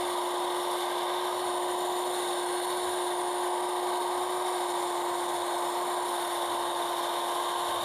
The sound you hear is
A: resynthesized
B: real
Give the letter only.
B